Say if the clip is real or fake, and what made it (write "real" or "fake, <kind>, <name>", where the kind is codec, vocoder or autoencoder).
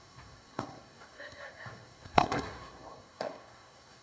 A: fake, codec, SNAC